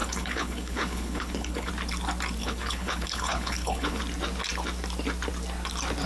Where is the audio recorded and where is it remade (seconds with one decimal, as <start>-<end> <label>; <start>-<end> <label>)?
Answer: 0.0-1.7 remade; 1.7-2.4 recorded; 2.4-4.0 remade; 4.0-6.1 recorded